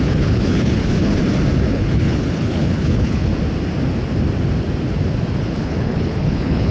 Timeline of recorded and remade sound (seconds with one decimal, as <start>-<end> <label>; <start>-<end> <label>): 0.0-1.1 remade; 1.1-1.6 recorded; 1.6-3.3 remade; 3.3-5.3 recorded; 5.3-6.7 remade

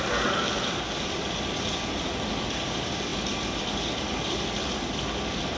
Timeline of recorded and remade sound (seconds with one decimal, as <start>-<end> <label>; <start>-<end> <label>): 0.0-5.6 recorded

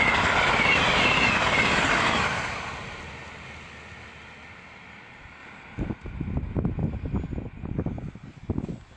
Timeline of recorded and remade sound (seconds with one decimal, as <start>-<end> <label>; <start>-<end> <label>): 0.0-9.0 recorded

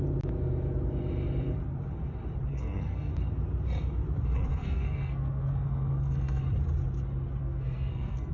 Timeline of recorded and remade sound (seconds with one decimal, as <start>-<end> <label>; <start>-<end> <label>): 0.0-2.5 recorded; 2.5-3.1 remade; 3.1-4.5 recorded; 4.5-6.4 remade; 6.4-7.4 recorded; 7.4-8.3 remade

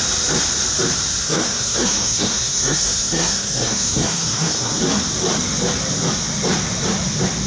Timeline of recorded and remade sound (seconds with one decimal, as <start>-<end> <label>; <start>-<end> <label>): 0.0-1.2 recorded; 1.2-4.8 remade; 4.8-7.5 recorded

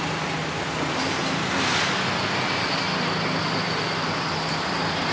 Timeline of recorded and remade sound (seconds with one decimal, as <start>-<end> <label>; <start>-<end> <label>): 0.0-5.1 recorded

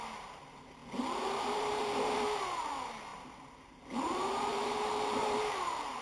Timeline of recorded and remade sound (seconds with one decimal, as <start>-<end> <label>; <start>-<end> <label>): 0.0-0.8 remade; 0.8-1.5 recorded; 1.5-6.0 remade

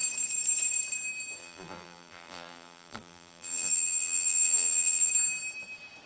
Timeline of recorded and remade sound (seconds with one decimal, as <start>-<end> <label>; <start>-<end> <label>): 0.0-1.4 recorded; 1.4-5.1 remade; 5.1-6.1 recorded